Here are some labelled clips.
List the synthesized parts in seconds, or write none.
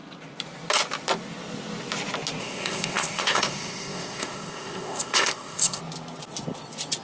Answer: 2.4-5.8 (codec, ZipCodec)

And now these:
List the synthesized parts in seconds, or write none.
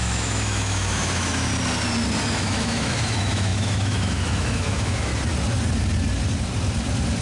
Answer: 0.0-1.5 (autoencoder, DAC-VAE); 2.3-5.1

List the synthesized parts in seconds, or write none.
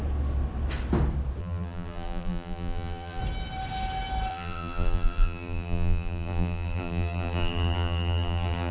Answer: 1.4-3.2 (vocoder, BigVGAN v2); 4.3-8.7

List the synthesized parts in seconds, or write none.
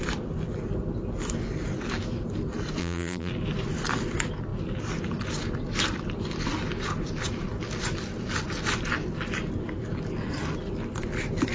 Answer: 2.8-3.3 (vocoder, BigVGAN v2)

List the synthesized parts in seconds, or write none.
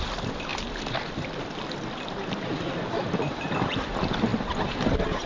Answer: none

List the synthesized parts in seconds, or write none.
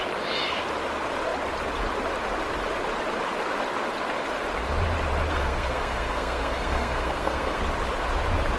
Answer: 5.3-7.6 (codec, SNAC)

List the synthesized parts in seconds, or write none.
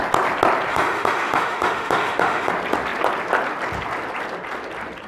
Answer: 0.7-2.5 (autoencoder, DAC-VAE)